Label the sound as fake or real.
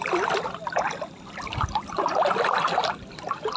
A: fake